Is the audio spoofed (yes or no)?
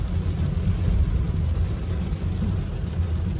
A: no